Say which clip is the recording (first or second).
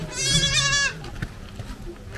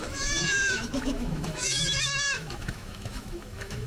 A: first